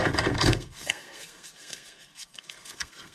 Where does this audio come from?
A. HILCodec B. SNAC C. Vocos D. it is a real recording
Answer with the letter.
B